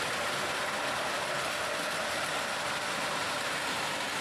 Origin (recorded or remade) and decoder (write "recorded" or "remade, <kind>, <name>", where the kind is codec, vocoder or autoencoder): recorded